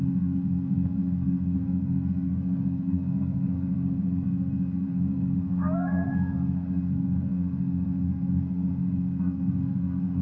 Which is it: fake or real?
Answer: fake